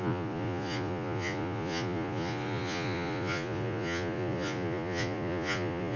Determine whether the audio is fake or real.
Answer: fake